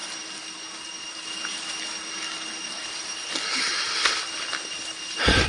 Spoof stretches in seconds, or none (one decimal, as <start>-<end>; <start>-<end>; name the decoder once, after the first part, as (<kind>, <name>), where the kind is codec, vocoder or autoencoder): none